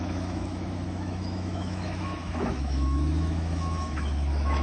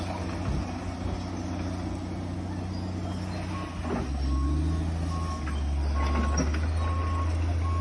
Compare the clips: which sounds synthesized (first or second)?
first